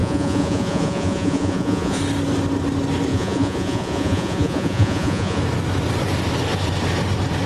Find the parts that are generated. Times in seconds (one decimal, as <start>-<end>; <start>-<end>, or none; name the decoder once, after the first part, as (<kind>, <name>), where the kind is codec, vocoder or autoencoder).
0.0-2.0 (vocoder, Vocos); 3.1-5.4